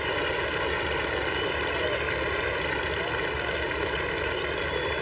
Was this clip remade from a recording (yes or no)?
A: no